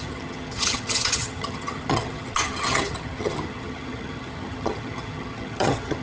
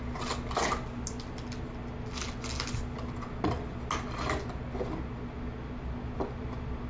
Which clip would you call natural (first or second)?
second